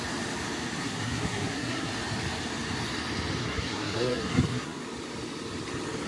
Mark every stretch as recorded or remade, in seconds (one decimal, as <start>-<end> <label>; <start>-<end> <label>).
0.0-0.8 recorded; 0.8-1.9 remade; 1.9-3.4 recorded; 3.4-4.8 remade; 4.8-6.1 recorded